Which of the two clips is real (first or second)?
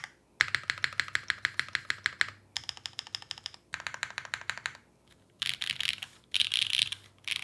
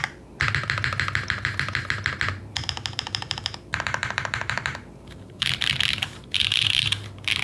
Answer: first